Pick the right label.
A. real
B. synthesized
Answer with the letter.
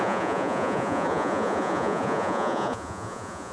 B